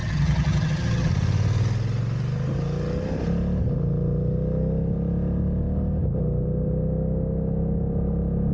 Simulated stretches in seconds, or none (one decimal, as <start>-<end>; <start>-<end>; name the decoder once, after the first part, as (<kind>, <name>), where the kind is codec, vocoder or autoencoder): 0.0-1.1 (vocoder, HiFi-GAN)